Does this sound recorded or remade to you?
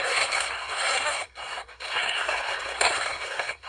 remade